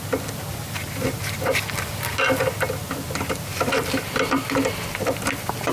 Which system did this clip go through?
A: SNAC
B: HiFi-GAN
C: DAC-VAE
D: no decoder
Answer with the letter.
D